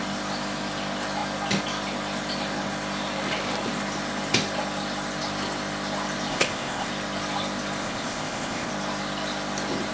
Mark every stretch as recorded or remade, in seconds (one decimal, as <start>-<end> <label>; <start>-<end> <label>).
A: 0.0-6.3 recorded; 6.3-6.9 remade; 6.9-7.8 recorded; 7.8-8.7 remade; 8.7-9.9 recorded